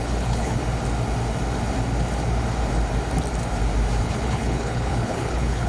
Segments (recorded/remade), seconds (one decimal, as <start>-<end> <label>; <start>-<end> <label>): 0.0-0.6 remade; 0.6-4.0 recorded; 4.0-5.7 remade